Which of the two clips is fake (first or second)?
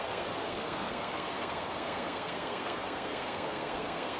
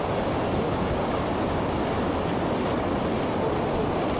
first